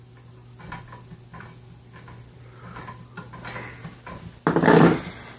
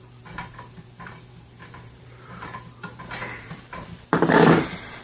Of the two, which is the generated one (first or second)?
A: second